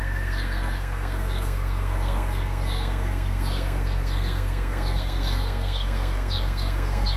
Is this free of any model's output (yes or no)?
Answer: no